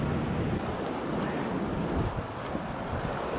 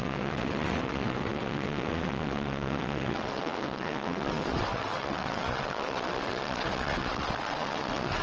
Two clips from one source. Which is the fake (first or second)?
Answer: second